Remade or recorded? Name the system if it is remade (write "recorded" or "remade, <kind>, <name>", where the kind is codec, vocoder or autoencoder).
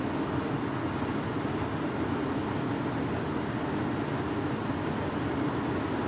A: recorded